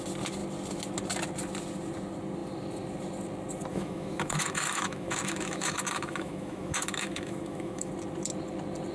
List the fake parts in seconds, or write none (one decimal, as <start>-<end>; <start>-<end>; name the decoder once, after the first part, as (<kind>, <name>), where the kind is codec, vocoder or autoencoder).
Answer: 3.7-7.9 (autoencoder, DAC-VAE)